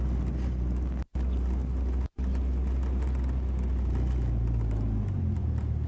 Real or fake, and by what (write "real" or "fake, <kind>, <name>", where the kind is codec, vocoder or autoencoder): real